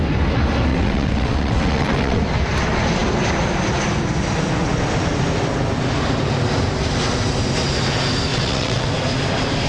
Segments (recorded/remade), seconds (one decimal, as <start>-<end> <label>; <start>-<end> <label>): 0.0-0.7 recorded; 0.7-2.2 remade; 2.2-8.3 recorded; 8.3-8.9 remade; 8.9-9.7 recorded